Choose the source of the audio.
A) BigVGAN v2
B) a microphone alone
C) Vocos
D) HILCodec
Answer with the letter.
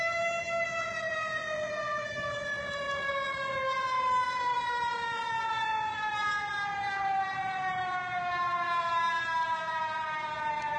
B